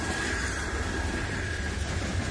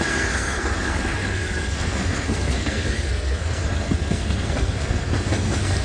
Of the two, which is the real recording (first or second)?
first